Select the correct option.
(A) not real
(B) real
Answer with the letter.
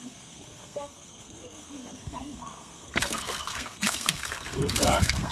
A